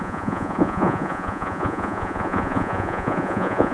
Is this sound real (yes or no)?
no